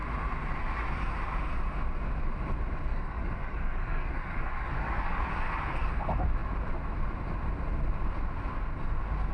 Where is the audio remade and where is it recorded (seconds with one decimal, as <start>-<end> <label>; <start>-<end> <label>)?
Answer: 0.0-2.9 recorded; 2.9-5.3 remade; 5.3-9.3 recorded